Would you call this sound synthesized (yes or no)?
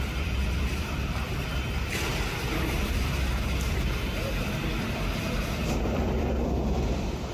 yes